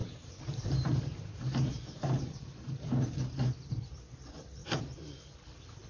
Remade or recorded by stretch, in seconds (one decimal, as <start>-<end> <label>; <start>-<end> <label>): 0.0-3.5 remade; 3.5-5.9 recorded